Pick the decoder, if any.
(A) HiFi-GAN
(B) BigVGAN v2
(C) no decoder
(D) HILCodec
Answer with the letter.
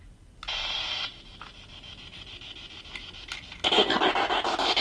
C